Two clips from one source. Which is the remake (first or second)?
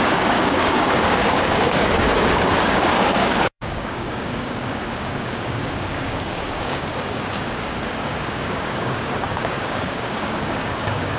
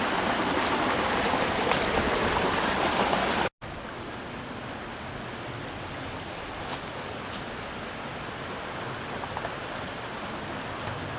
first